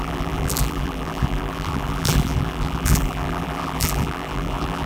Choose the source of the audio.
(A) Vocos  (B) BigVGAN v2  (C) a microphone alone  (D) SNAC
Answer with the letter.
B